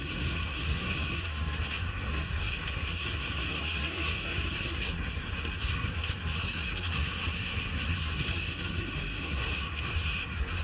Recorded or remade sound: remade